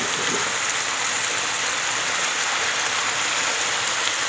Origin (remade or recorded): recorded